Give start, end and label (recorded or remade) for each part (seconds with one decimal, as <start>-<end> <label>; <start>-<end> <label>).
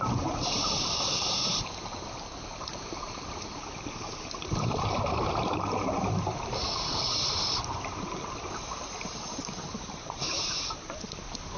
0.0-1.4 remade; 1.4-2.6 recorded; 2.6-11.6 remade